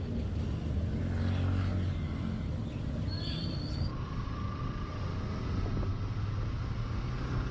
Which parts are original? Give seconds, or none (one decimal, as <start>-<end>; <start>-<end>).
0.0-7.5